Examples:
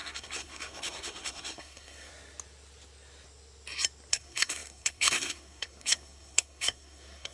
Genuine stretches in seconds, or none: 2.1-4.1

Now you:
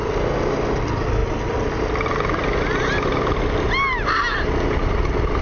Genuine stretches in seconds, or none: 0.0-5.4

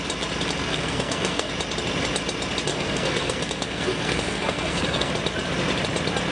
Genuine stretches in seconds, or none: 0.0-0.7; 1.5-2.7; 5.1-6.3

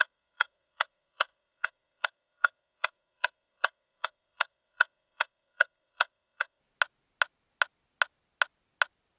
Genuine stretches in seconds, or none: 6.6-9.2

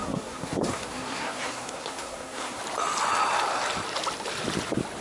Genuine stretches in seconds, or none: 2.6-5.0

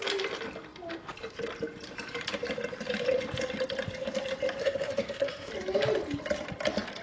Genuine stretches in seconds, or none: 0.0-4.6; 5.5-7.0

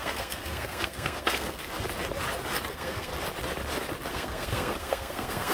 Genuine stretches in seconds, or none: 1.6-2.7; 3.1-4.1

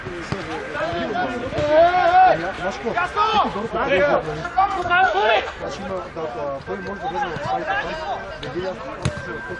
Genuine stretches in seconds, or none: 0.0-4.4; 5.7-9.6